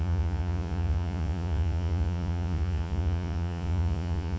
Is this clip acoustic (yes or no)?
no